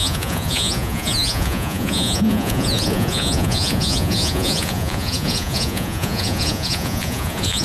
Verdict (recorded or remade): remade